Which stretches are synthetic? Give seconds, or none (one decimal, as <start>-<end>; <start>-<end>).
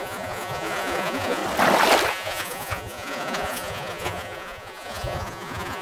0.0-1.4; 2.1-5.8